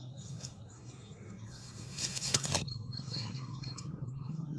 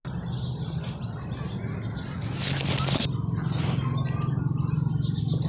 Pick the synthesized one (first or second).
first